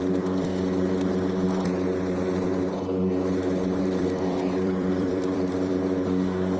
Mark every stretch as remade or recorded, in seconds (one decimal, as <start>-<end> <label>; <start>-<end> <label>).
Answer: 0.0-0.5 remade; 0.5-3.8 recorded; 3.8-5.7 remade; 5.7-6.6 recorded